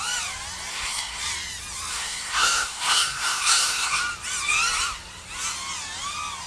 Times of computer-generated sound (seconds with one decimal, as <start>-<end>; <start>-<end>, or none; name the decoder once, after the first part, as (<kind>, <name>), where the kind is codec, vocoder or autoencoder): 0.7-1.2 (codec, SNAC); 1.9-4.0